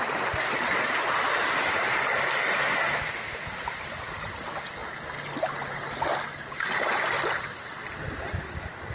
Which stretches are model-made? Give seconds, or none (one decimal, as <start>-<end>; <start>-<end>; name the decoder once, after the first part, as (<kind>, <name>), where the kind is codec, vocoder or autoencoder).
none